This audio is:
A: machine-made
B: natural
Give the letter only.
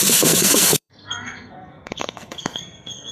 A